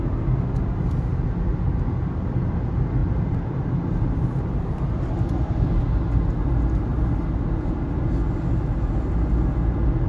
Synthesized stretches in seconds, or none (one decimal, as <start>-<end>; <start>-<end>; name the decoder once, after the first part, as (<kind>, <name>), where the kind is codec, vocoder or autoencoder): 3.0-5.8 (vocoder, BigVGAN v2); 6.9-7.7